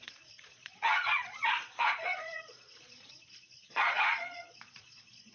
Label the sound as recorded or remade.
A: remade